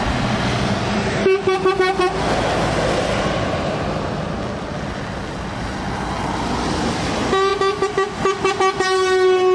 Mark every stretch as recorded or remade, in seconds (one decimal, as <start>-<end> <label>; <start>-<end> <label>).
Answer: 0.0-9.5 recorded

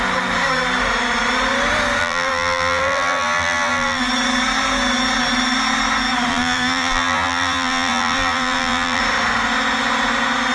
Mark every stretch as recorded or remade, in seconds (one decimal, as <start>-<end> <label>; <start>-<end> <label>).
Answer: 0.0-2.0 recorded; 2.0-4.0 remade; 4.0-6.3 recorded; 6.3-9.0 remade; 9.0-10.5 recorded

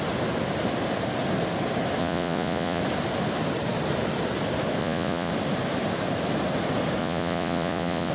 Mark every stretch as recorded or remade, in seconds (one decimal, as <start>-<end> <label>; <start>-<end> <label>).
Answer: 0.0-2.0 recorded; 2.0-2.8 remade; 2.8-4.8 recorded; 4.8-5.3 remade; 5.3-7.0 recorded; 7.0-8.1 remade

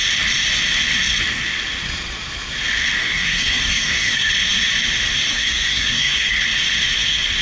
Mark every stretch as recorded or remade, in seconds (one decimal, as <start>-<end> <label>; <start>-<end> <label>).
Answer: 0.0-3.0 recorded; 3.0-4.3 remade; 4.3-5.3 recorded; 5.3-6.3 remade; 6.3-7.4 recorded

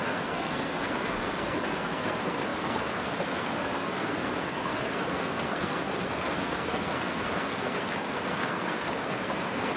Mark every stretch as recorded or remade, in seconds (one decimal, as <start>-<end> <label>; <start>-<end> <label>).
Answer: 0.0-9.8 remade